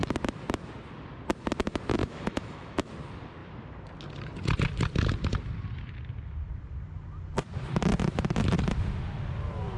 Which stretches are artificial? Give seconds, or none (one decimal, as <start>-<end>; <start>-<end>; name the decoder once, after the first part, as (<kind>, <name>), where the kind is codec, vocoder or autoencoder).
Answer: 2.0-2.9 (autoencoder, DAC-VAE)